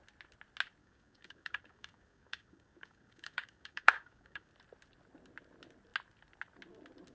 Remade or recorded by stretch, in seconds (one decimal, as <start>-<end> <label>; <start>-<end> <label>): 0.0-0.8 recorded; 0.8-4.5 remade; 4.5-7.1 recorded